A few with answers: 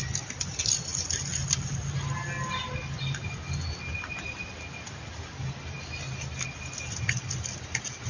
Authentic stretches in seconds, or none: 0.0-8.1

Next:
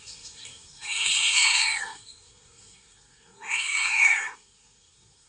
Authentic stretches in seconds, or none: none

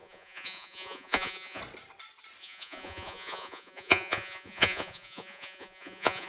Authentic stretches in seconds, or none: 1.6-2.4

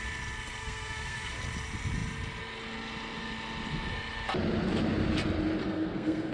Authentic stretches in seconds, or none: 0.0-0.6; 1.3-5.6